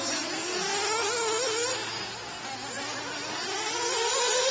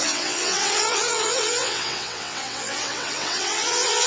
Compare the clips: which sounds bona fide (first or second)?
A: first